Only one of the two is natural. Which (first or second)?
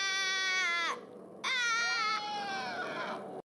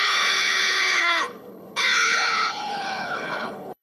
first